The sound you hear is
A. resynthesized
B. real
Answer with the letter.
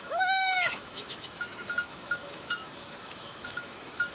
A